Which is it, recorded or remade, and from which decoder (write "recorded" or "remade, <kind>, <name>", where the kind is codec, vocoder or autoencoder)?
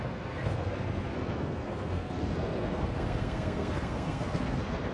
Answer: remade, codec, SNAC